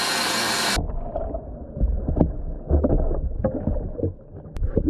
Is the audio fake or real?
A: real